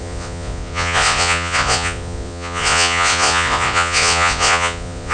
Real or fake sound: fake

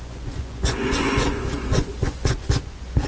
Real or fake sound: fake